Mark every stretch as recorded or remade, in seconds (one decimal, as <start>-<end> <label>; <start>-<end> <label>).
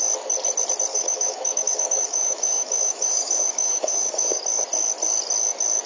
0.0-0.9 recorded; 0.9-4.4 remade; 4.4-5.9 recorded